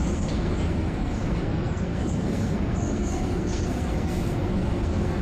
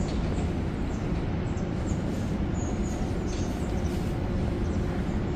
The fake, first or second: first